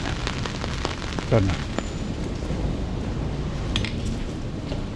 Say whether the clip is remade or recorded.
recorded